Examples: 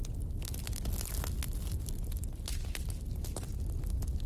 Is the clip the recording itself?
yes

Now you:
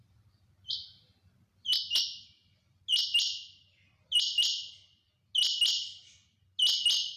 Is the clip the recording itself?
yes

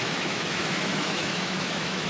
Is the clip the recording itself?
no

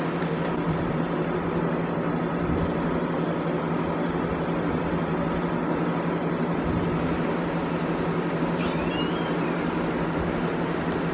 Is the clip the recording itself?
yes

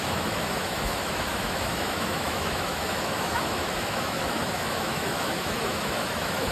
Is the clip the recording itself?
no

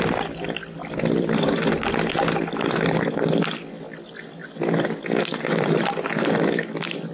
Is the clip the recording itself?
yes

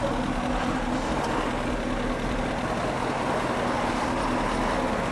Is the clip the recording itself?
yes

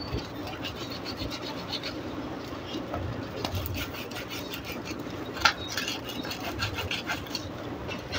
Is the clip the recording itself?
yes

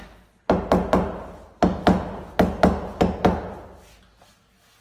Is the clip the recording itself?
yes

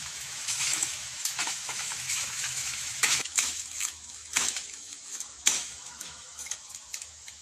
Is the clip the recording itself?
no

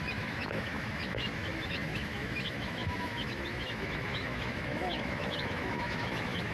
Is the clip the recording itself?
no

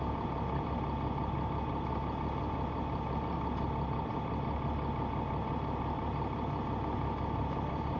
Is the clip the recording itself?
yes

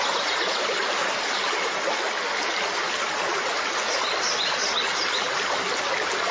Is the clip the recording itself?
yes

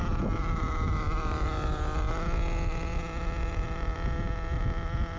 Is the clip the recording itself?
yes